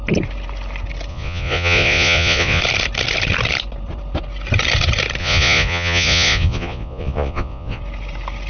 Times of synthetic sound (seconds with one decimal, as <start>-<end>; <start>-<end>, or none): 1.1-2.6; 5.2-7.8